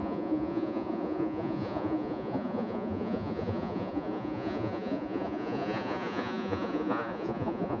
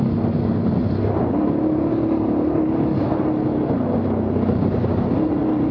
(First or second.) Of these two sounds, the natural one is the second